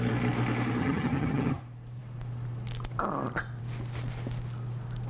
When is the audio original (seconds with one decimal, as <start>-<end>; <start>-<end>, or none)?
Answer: 0.0-0.8; 1.6-5.1